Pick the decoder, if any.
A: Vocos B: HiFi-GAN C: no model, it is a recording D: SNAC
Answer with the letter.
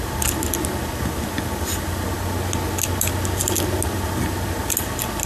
C